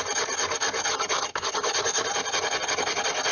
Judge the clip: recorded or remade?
recorded